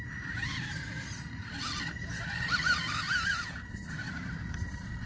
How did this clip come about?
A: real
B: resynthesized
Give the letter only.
B